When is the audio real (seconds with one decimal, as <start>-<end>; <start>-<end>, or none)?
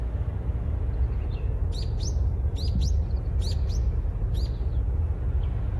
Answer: 0.0-5.8